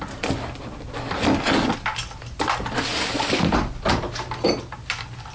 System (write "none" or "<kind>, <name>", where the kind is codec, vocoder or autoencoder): none